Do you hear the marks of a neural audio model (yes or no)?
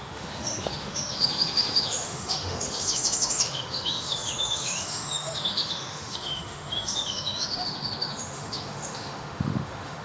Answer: yes